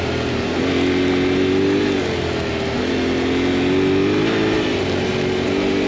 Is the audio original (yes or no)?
yes